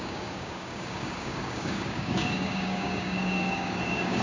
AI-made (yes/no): yes